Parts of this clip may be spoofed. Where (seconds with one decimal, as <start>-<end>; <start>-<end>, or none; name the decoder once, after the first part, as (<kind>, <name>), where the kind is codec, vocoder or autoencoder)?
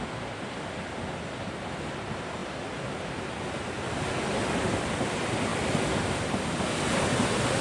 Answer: none